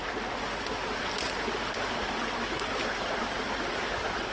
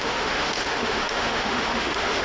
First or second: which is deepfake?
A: second